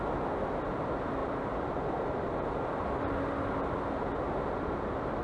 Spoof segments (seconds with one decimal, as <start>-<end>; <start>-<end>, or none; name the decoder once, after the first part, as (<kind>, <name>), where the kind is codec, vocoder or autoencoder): 1.2-2.3 (vocoder, BigVGAN v2)